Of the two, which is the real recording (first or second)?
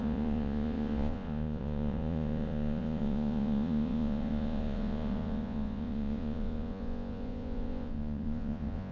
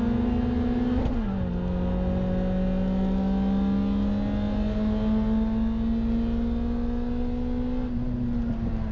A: second